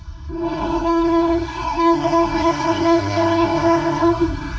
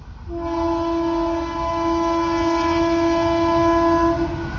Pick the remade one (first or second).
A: first